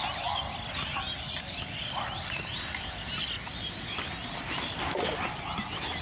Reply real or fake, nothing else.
real